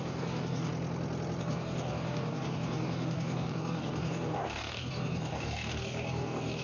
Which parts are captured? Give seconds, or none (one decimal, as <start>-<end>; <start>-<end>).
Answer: 0.7-1.4